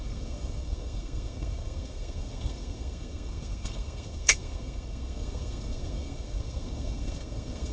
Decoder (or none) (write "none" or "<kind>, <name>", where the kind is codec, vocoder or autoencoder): codec, SNAC